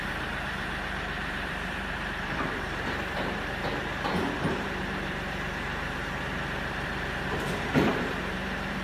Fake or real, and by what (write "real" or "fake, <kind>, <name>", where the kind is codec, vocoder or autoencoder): fake, vocoder, BigVGAN v2